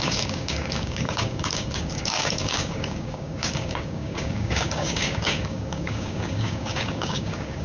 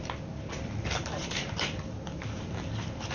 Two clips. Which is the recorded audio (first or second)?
second